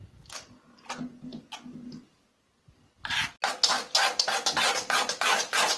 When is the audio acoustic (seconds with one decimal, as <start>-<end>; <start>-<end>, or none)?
0.0-5.8